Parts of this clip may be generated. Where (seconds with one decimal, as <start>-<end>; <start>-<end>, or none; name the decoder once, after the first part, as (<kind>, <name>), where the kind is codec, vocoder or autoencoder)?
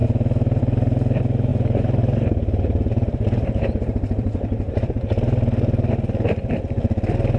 1.5-5.9 (vocoder, BigVGAN v2)